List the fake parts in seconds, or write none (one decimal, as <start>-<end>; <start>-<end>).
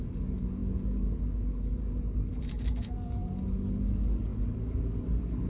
0.0-5.5